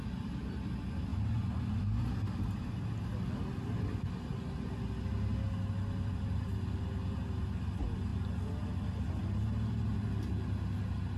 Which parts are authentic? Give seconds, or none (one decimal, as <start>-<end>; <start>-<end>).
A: 0.0-11.2